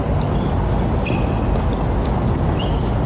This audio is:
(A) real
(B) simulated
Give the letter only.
A